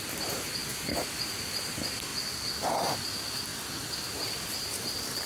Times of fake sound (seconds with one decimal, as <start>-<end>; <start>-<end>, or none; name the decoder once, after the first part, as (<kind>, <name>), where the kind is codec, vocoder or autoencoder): 3.5-5.3 (vocoder, BigVGAN v2)